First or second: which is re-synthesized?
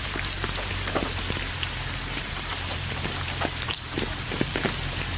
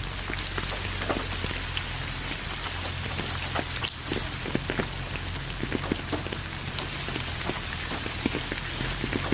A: first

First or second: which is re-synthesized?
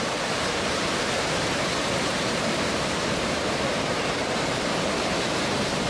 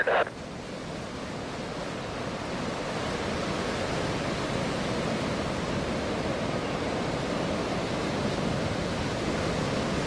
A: first